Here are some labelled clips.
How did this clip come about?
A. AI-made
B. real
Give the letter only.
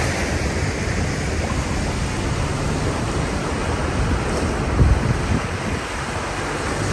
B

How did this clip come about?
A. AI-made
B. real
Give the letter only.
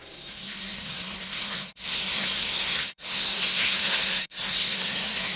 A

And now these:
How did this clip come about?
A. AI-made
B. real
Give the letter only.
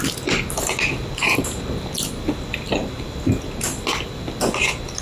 B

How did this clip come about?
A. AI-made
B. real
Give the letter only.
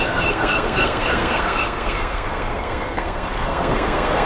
A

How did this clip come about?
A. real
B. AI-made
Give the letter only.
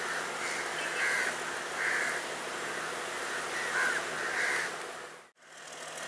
A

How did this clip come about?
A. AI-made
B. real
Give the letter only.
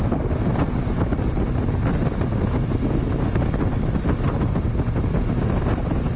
B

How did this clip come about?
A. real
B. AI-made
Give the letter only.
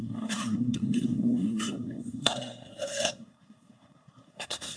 B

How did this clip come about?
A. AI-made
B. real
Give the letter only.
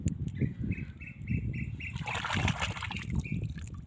B